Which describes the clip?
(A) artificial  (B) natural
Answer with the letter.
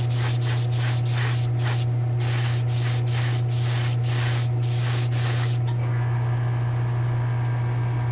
B